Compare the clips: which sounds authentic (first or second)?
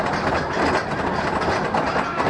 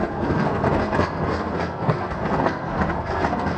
first